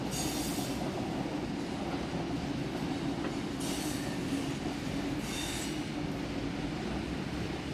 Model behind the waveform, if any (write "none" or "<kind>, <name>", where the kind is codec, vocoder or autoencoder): none